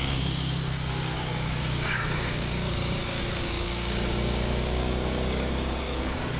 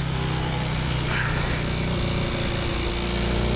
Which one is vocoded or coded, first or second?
first